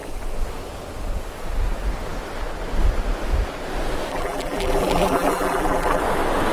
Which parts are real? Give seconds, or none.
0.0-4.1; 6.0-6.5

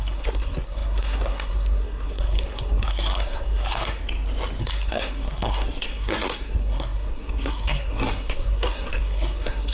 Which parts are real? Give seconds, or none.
4.0-4.6

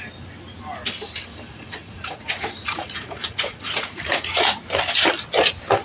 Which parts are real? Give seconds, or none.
0.0-1.5; 4.6-5.8